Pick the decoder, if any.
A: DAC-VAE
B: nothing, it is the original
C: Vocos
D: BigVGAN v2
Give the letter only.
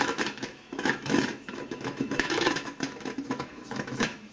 A